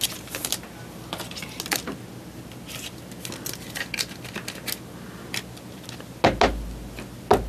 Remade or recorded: recorded